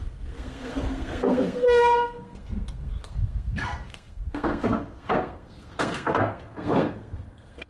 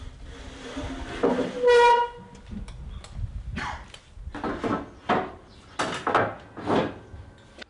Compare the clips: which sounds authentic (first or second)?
second